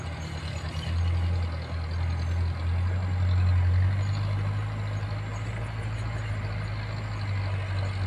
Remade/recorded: recorded